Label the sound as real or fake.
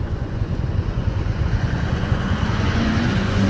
fake